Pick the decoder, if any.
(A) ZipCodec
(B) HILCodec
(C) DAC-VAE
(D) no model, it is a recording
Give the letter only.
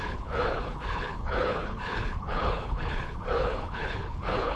B